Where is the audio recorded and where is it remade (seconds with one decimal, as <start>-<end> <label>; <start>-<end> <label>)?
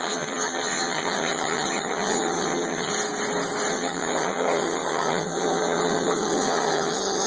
0.0-2.9 remade; 2.9-3.7 recorded; 3.7-7.3 remade